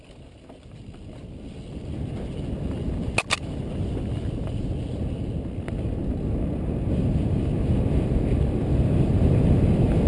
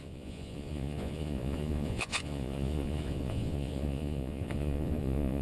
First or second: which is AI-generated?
second